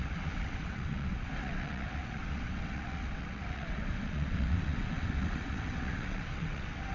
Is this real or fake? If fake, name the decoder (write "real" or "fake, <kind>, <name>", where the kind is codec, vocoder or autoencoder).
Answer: fake, vocoder, WaveNeXt